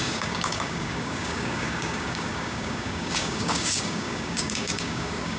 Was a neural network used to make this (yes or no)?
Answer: yes